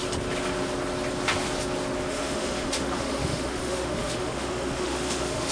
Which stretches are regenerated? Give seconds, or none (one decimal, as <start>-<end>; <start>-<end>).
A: 2.1-5.5